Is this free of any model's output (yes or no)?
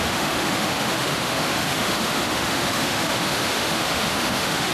no